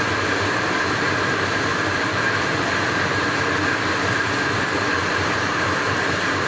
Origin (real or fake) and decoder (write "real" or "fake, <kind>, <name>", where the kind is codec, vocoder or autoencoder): fake, vocoder, BigVGAN v2